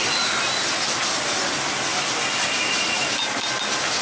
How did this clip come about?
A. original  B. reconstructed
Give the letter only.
A